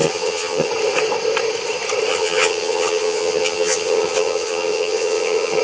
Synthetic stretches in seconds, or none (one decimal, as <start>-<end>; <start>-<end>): 0.0-0.7; 2.1-5.6